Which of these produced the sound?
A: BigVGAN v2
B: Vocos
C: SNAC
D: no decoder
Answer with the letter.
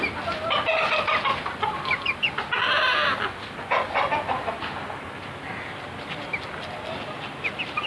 D